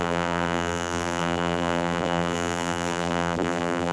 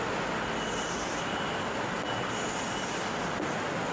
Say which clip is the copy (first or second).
first